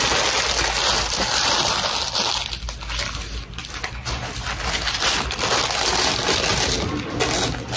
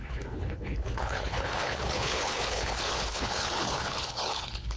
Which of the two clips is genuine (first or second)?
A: first